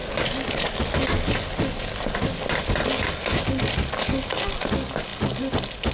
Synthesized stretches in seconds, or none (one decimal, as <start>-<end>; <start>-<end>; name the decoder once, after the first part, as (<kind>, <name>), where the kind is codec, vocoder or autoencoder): none